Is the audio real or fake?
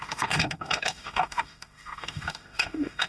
fake